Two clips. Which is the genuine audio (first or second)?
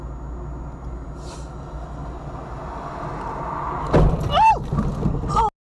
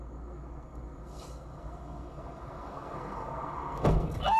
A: first